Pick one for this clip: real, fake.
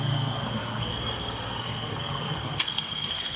fake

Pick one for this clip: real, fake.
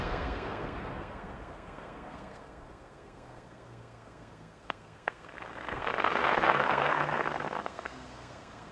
fake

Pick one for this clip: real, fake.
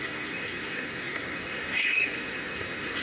fake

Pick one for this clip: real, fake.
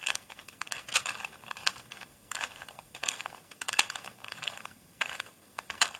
fake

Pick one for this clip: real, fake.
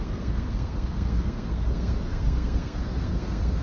fake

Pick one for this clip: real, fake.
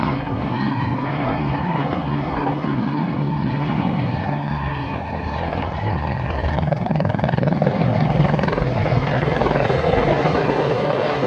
fake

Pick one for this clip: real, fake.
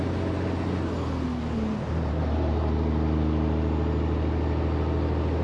real